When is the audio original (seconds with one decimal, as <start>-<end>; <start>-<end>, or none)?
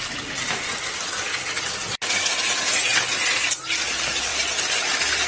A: 0.0-5.3